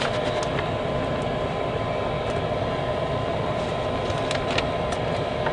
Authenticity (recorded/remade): recorded